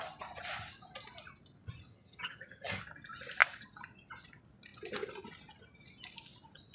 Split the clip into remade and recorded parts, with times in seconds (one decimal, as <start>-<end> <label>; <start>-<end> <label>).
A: 0.0-1.9 recorded; 1.9-2.8 remade; 2.8-6.7 recorded

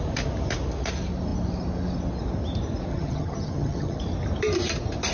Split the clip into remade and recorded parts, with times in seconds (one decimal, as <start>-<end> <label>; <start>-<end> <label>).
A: 0.0-2.9 recorded; 2.9-4.0 remade; 4.0-5.1 recorded

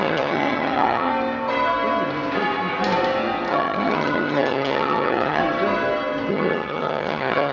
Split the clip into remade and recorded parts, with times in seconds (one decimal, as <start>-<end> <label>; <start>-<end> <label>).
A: 0.0-1.1 remade; 1.1-3.5 recorded; 3.5-5.4 remade; 5.4-6.3 recorded; 6.3-7.5 remade

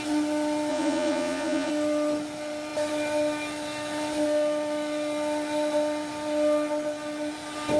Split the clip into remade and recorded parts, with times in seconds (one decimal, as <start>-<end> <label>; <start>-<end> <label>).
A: 0.0-0.7 recorded; 0.7-1.7 remade; 1.7-7.8 recorded

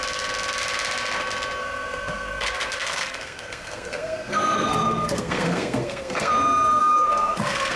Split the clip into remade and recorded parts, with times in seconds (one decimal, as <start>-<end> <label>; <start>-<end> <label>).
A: 0.0-1.6 recorded; 1.6-6.3 remade; 6.3-6.8 recorded; 6.8-7.8 remade

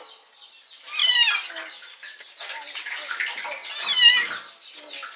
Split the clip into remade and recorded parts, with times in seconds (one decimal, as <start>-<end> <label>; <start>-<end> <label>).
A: 0.0-1.0 recorded; 1.0-1.5 remade; 1.5-5.2 recorded

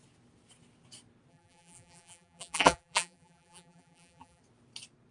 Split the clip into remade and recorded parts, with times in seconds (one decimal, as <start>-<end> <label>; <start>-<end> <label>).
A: 0.0-1.3 recorded; 1.3-4.4 remade; 4.4-5.1 recorded

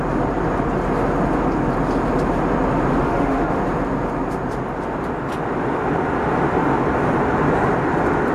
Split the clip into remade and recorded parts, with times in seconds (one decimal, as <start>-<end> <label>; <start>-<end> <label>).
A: 0.0-2.9 recorded; 2.9-3.6 remade; 3.6-8.3 recorded